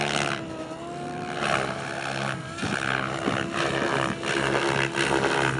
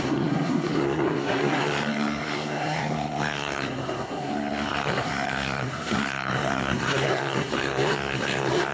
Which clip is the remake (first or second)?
second